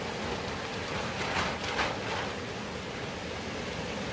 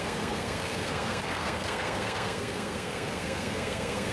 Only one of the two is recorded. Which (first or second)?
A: first